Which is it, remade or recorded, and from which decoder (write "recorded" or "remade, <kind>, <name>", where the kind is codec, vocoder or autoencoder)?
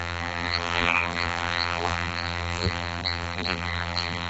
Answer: remade, vocoder, BigVGAN v2